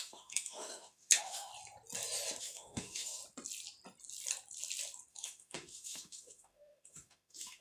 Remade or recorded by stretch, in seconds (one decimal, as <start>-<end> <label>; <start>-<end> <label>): 0.0-1.5 remade; 1.5-2.4 recorded; 2.4-3.2 remade; 3.2-5.1 recorded; 5.1-7.6 remade